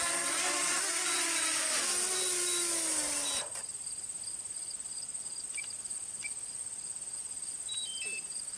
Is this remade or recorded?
recorded